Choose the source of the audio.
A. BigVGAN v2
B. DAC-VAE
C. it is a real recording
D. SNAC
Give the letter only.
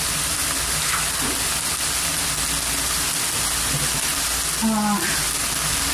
C